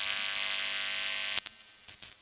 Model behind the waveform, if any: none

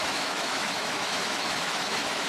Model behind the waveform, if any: autoencoder, DAC-VAE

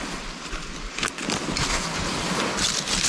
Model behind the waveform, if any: none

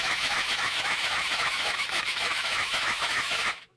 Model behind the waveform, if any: autoencoder, DAC-VAE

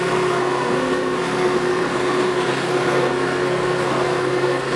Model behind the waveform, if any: codec, SNAC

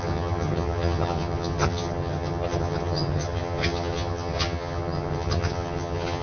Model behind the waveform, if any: vocoder, HiFi-GAN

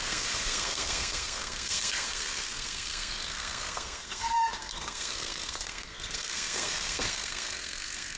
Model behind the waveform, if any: codec, SNAC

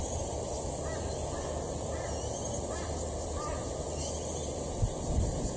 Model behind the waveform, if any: none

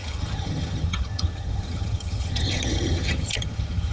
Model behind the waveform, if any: vocoder, HiFi-GAN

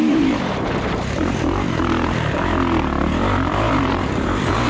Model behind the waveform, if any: vocoder, BigVGAN v2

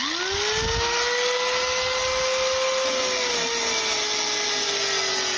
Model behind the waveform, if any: none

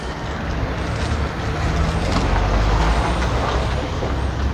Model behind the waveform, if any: none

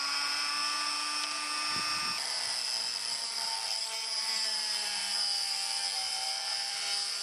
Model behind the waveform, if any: vocoder, BigVGAN v2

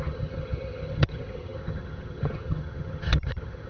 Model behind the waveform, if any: vocoder, HiFi-GAN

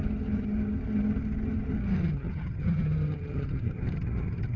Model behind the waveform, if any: vocoder, HiFi-GAN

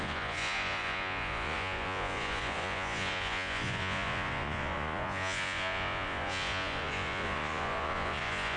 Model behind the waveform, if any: vocoder, Vocos